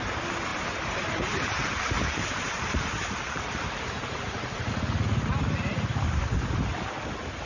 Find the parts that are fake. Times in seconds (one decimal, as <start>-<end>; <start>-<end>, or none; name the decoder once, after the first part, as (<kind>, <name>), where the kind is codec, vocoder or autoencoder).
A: 0.5-4.7 (vocoder, BigVGAN v2)